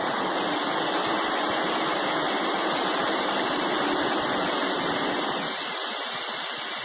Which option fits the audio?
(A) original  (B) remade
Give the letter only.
A